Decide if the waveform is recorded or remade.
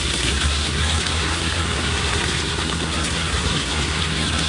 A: remade